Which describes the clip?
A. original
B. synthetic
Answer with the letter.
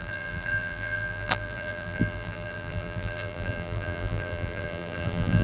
B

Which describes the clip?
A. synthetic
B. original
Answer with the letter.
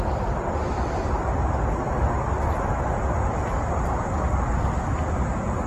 B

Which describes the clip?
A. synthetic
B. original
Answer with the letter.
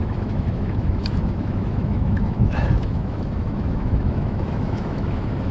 A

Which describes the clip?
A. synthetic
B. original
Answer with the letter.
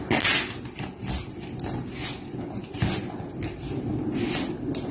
B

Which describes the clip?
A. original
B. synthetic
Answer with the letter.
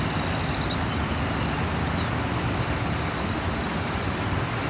A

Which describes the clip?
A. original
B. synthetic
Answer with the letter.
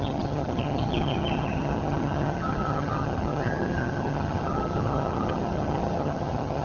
B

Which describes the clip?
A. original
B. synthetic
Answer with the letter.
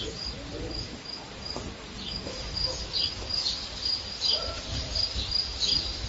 A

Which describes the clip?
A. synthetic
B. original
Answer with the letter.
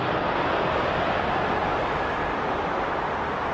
B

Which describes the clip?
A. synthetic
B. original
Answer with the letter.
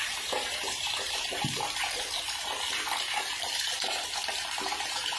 A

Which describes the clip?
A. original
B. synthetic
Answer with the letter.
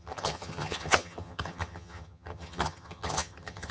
B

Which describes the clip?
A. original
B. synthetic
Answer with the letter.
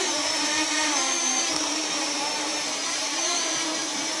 B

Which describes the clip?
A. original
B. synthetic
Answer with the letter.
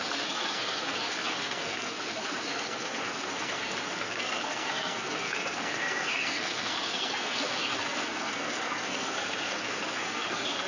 B